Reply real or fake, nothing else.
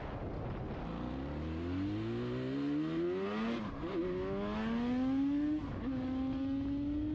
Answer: real